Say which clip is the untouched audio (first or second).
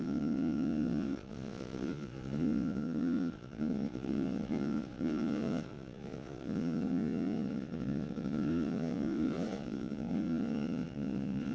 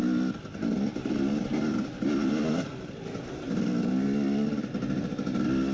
second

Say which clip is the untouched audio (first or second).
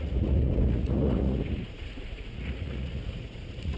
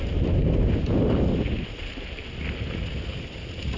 second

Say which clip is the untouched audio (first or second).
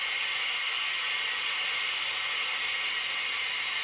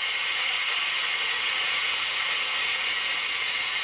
first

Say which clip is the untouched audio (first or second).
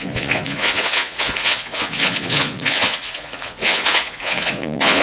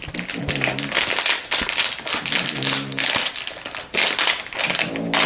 second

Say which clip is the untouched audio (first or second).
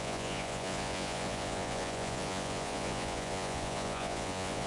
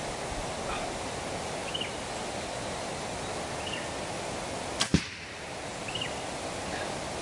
second